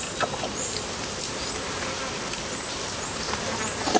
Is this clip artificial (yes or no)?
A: no